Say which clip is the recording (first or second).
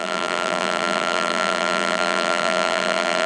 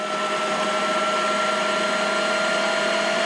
second